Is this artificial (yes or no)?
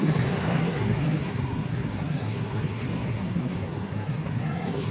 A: yes